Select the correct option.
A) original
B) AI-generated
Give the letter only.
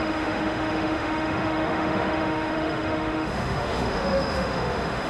B